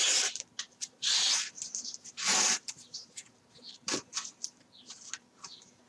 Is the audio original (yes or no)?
no